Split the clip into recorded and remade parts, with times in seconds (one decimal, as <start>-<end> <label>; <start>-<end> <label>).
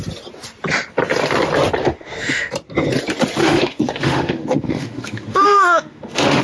0.0-1.8 recorded; 1.8-2.5 remade; 2.5-3.4 recorded; 3.4-6.4 remade